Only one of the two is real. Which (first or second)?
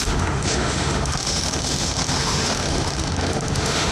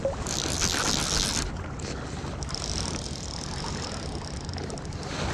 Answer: second